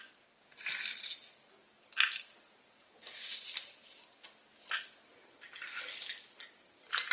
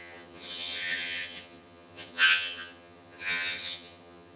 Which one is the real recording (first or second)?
first